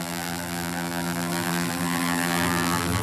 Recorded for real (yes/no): no